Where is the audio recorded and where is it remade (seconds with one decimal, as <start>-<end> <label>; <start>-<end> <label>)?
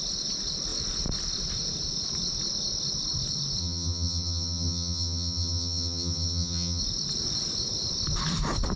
0.0-3.6 recorded; 3.6-6.8 remade; 6.8-8.8 recorded